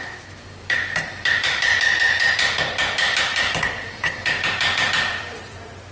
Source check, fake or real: fake